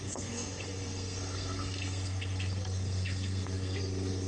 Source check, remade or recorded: remade